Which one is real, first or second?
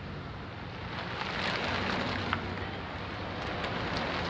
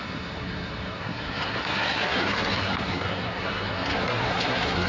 first